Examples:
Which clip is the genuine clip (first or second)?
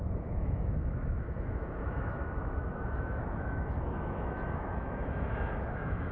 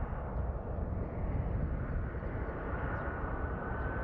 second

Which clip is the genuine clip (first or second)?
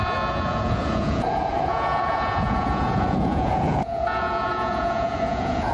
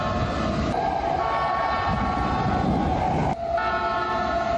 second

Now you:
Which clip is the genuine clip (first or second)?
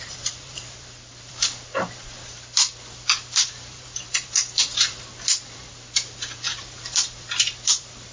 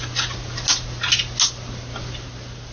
second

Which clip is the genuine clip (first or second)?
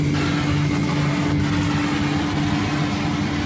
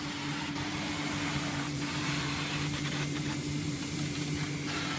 first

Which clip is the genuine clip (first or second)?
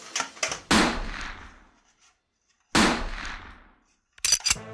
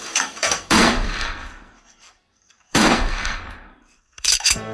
first